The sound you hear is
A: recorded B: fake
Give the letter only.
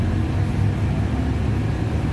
A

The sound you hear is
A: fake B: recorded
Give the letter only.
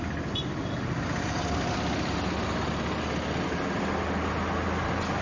B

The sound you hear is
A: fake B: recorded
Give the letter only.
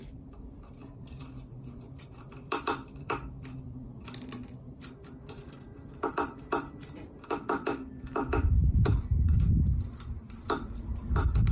A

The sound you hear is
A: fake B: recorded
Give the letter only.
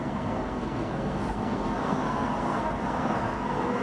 A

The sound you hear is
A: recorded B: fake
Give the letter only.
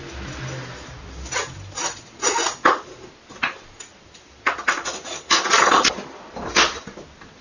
A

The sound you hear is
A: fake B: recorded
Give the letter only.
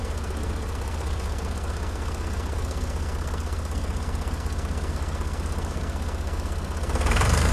A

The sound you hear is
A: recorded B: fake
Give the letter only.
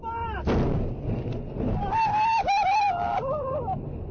A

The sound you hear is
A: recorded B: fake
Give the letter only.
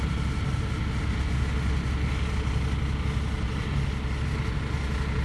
A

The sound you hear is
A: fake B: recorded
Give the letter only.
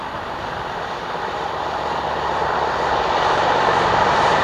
A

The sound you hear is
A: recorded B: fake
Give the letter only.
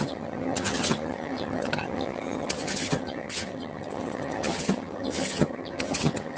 B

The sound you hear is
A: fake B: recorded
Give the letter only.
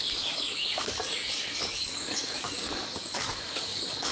A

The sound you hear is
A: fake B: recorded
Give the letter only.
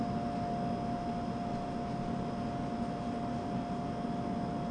B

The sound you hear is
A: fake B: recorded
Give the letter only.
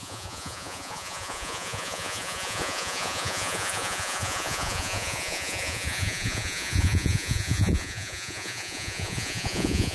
A